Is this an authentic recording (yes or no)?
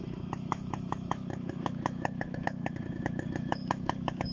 no